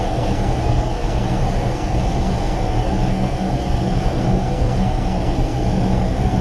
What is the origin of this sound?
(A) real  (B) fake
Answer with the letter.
B